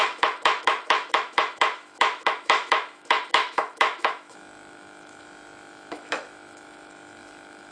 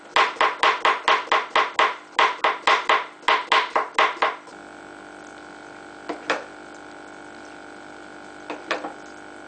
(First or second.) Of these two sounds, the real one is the second